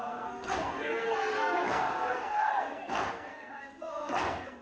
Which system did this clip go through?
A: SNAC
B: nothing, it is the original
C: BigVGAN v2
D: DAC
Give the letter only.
A